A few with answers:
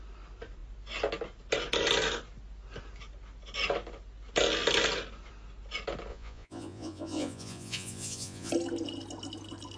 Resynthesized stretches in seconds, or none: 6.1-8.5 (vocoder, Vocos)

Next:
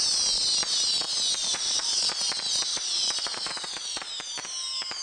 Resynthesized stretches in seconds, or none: 1.4-2.1 (vocoder, Vocos); 2.7-4.1

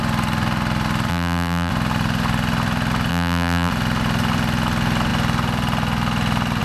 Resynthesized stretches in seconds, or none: 1.1-1.7 (vocoder, BigVGAN v2); 3.1-3.7

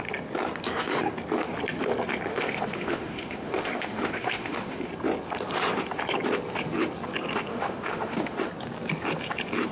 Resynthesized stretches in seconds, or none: 2.3-4.9 (autoencoder, DAC-VAE); 7.5-8.5

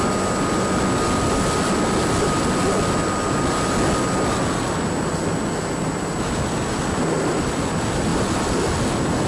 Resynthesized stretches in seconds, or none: none

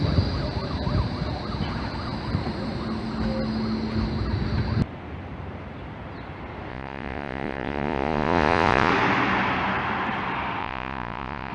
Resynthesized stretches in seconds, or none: 6.7-8.9 (vocoder, Vocos); 10.6-11.5